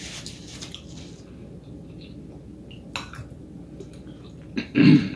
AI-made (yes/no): no